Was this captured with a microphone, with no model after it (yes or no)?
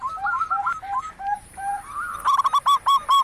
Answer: no